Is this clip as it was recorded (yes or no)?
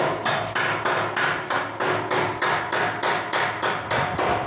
yes